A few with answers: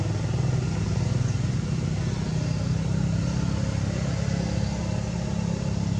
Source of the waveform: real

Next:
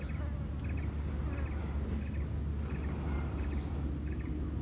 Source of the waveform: real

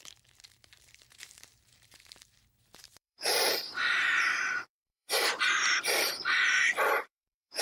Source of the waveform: fake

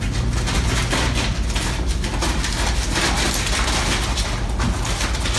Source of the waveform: real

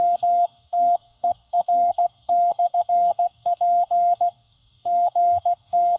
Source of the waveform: fake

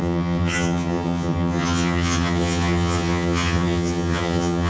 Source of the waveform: fake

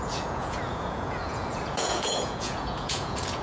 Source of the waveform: fake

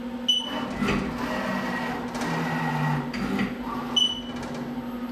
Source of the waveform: real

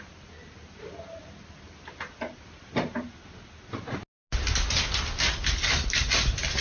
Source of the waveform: real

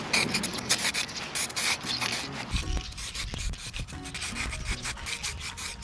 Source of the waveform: real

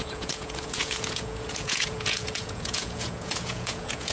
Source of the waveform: fake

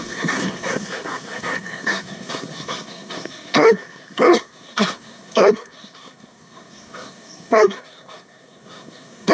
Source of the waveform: fake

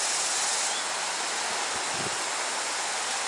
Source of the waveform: real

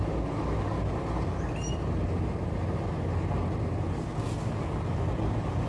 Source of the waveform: real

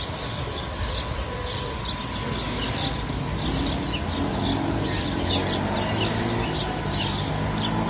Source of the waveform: real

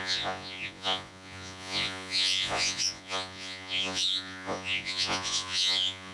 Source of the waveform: fake